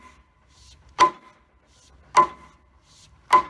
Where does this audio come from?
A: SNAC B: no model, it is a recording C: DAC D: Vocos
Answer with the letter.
B